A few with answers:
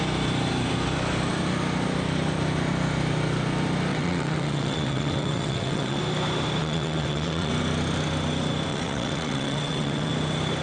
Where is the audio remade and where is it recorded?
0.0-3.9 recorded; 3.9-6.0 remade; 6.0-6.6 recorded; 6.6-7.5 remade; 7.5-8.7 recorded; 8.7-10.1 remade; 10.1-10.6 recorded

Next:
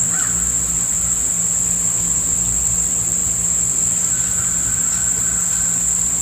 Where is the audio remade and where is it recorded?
0.0-6.2 recorded

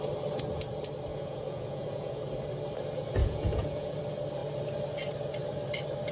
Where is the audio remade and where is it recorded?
0.0-1.1 recorded; 1.1-2.2 remade; 2.2-3.2 recorded; 3.2-4.0 remade; 4.0-6.1 recorded

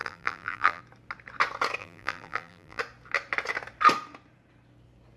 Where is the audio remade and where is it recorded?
0.0-0.8 remade; 0.8-1.8 recorded; 1.8-2.8 remade; 2.8-5.2 recorded

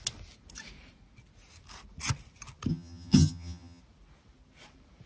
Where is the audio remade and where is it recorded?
0.0-2.7 recorded; 2.7-3.8 remade; 3.8-5.1 recorded

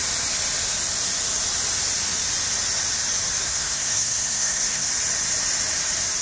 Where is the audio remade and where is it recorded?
0.0-3.4 recorded; 3.4-4.9 remade; 4.9-6.2 recorded

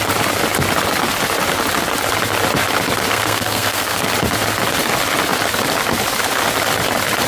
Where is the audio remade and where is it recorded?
0.0-3.1 recorded; 3.1-4.0 remade; 4.0-7.3 recorded